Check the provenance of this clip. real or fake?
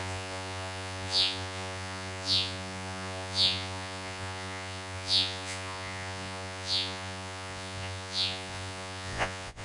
fake